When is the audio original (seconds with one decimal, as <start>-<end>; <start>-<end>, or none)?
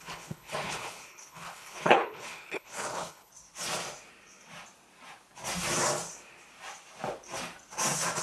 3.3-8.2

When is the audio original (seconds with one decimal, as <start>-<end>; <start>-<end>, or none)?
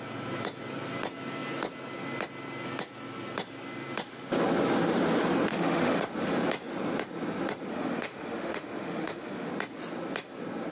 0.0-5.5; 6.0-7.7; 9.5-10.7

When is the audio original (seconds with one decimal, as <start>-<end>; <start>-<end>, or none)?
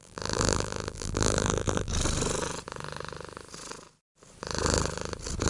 1.9-5.5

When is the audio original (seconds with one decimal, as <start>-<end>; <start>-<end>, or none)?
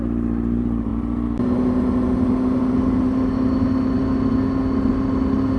0.0-5.6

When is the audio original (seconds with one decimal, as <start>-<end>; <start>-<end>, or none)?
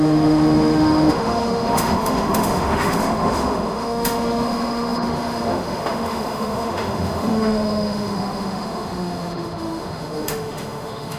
none